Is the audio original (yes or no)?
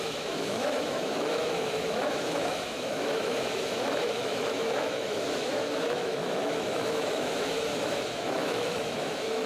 no